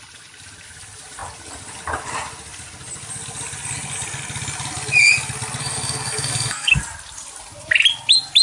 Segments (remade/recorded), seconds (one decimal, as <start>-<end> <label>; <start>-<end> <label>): 0.0-5.6 recorded; 5.6-6.7 remade; 6.7-8.4 recorded